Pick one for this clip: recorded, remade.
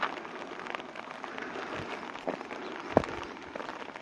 recorded